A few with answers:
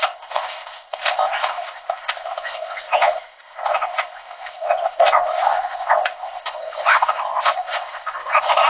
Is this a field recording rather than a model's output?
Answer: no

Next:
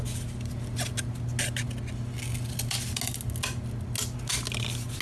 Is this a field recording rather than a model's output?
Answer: yes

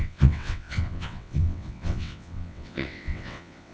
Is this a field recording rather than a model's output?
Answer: no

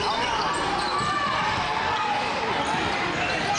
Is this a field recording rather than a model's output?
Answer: yes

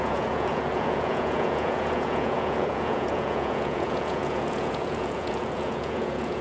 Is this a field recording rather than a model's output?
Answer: no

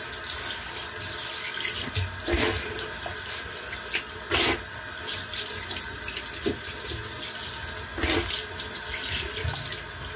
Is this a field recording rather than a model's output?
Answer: yes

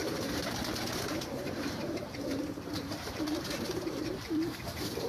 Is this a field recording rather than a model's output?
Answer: no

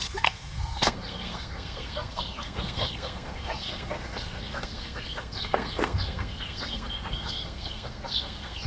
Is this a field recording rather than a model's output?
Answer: no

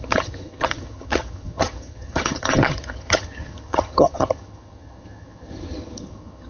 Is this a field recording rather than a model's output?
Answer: no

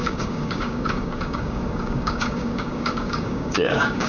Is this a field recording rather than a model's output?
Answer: no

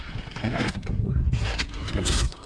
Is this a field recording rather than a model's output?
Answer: no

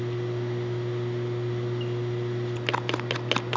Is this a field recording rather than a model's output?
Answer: yes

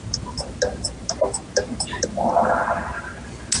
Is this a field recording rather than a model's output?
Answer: yes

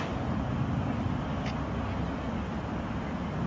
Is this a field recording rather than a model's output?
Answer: yes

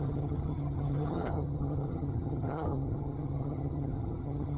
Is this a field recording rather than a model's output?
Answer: no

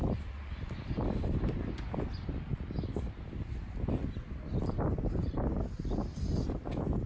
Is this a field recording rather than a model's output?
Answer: yes